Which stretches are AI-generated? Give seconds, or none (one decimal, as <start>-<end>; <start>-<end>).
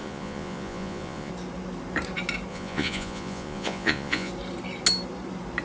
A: 0.0-1.3; 2.5-4.3